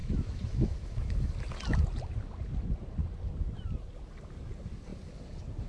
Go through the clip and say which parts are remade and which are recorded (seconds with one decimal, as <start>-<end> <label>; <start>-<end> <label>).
0.0-1.3 remade; 1.3-5.7 recorded